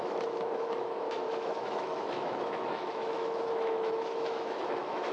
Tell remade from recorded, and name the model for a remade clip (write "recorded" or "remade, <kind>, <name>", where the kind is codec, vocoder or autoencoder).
remade, autoencoder, DAC-VAE